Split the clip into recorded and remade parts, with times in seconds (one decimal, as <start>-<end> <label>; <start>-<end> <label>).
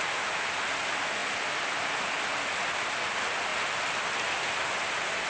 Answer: 0.0-5.3 recorded